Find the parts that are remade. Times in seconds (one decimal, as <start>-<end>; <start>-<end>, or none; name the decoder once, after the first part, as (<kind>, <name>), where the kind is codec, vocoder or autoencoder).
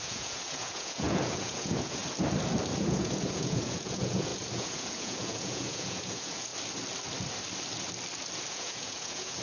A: 0.0-2.0 (vocoder, Vocos); 2.8-6.5; 8.5-9.4